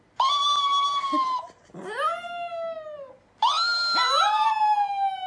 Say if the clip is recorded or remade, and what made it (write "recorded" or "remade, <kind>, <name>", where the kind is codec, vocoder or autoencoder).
recorded